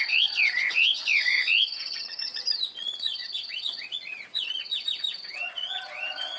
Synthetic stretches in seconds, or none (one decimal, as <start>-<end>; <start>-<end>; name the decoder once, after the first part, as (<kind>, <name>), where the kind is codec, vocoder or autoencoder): 0.0-6.4 (vocoder, Vocos)